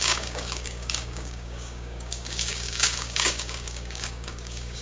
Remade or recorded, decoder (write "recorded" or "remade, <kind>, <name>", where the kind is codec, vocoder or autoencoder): remade, codec, DAC